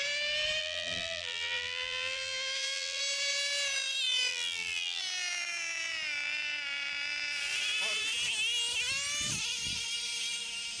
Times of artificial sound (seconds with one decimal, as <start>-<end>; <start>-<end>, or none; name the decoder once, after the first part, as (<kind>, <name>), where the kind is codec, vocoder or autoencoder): 0.6-3.0 (vocoder, BigVGAN v2); 4.3-5.0

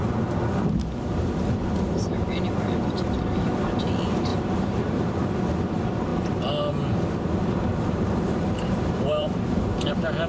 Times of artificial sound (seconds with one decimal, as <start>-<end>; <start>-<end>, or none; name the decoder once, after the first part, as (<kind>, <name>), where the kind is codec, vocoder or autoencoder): 4.3-5.1 (vocoder, BigVGAN v2); 7.7-9.4

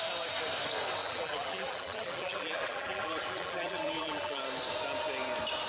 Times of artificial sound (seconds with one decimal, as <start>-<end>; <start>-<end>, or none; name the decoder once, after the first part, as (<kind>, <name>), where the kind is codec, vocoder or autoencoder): 1.0-4.4 (vocoder, BigVGAN v2)

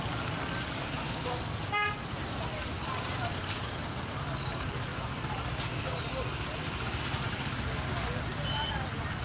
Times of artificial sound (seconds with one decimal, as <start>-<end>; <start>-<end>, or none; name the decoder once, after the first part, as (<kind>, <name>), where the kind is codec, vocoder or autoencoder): none